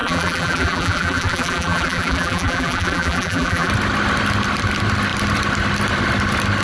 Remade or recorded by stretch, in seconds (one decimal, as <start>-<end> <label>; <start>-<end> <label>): 0.0-3.7 remade; 3.7-6.6 recorded